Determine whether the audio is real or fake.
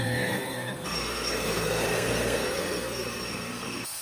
fake